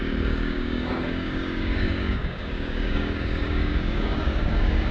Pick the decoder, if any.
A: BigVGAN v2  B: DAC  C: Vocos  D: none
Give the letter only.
B